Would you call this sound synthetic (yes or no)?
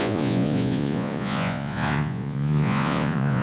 yes